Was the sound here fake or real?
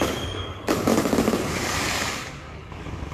fake